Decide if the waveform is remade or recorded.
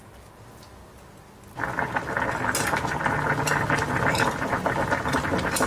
recorded